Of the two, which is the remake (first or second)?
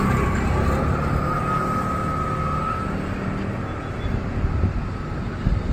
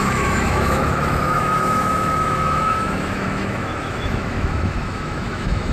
second